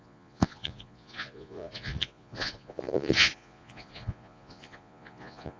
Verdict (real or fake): fake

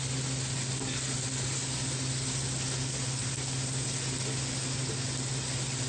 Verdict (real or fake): real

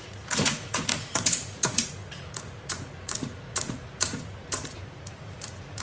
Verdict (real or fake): fake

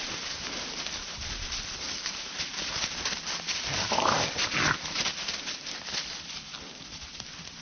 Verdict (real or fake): real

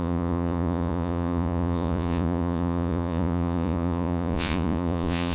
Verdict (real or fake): fake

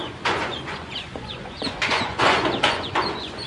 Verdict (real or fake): fake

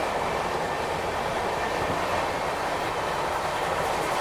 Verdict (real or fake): real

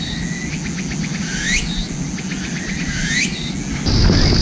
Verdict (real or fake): real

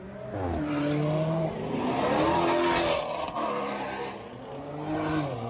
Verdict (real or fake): real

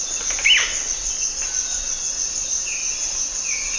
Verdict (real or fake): real